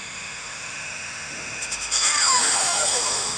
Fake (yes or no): yes